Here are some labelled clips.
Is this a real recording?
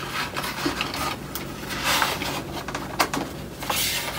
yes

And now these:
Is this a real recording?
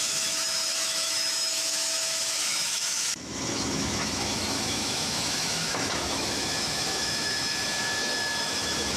no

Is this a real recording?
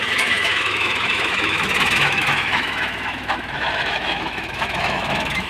no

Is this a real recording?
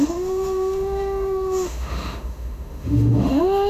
no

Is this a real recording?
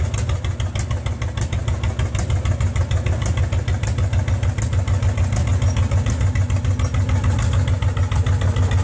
yes